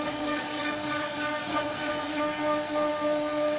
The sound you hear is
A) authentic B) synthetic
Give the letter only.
B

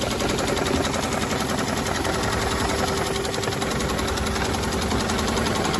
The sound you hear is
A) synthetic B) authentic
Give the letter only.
B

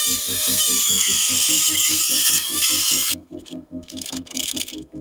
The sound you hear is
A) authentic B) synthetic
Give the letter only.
B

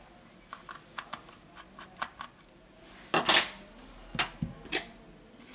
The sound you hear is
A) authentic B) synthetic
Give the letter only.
A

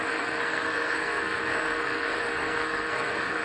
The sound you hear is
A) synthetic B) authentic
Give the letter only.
A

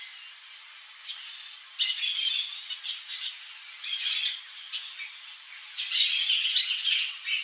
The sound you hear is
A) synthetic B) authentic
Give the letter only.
B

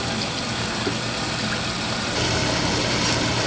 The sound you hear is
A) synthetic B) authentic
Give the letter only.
B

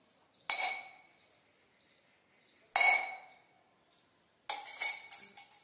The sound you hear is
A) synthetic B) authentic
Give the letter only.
B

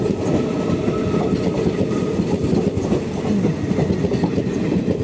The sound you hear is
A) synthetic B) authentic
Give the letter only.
B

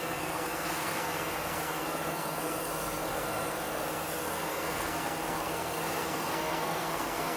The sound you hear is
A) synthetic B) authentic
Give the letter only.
A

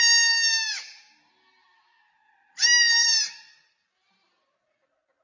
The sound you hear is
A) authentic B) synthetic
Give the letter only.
A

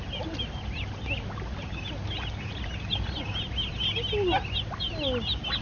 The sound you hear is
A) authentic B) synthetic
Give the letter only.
A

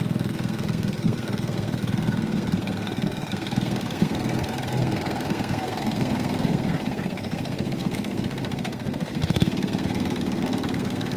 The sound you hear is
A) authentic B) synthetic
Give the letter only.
B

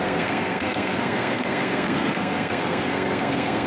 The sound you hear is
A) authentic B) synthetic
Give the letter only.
B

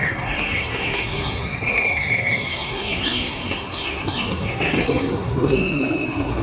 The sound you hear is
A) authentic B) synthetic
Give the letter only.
B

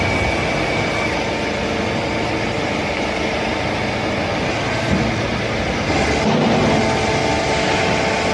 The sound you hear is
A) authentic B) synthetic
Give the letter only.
A